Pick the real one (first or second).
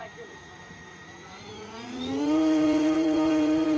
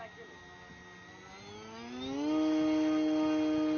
second